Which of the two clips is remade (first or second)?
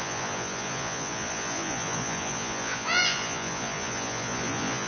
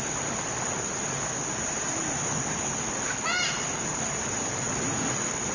first